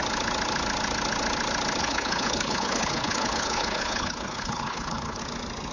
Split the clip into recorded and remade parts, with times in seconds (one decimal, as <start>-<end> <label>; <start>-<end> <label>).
0.0-1.8 recorded; 1.8-5.2 remade; 5.2-5.7 recorded